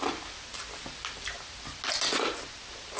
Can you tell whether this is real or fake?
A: real